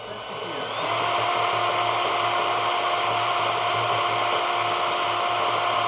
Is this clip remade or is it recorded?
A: recorded